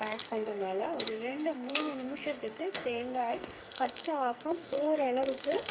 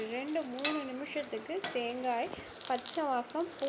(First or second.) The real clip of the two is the second